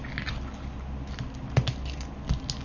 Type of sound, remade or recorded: recorded